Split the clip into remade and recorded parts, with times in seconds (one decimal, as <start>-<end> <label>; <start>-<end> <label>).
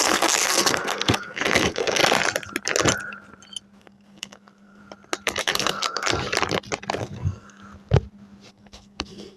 0.0-2.0 remade; 2.0-3.8 recorded; 3.8-4.8 remade; 4.8-5.4 recorded; 5.4-6.1 remade; 6.1-7.0 recorded; 7.0-7.6 remade; 7.6-8.5 recorded; 8.5-9.4 remade